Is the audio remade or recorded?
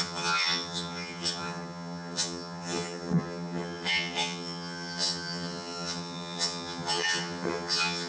remade